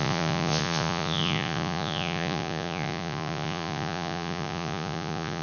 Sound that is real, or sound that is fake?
fake